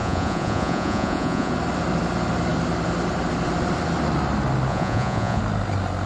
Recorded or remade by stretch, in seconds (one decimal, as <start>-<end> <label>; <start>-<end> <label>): 0.0-1.5 remade; 1.5-4.7 recorded; 4.7-5.4 remade; 5.4-6.1 recorded